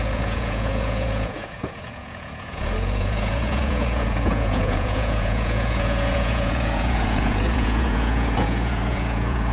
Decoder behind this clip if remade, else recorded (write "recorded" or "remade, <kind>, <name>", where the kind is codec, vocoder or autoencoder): remade, vocoder, Vocos